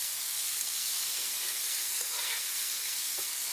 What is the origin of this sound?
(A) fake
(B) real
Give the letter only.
A